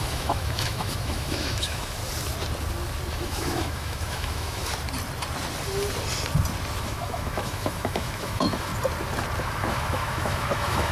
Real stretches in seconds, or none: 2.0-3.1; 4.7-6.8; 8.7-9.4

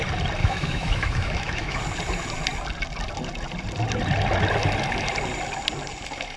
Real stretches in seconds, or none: 0.0-0.4; 1.8-6.4

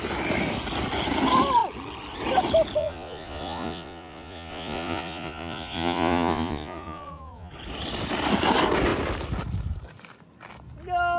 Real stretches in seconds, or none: 0.0-2.8; 7.5-11.2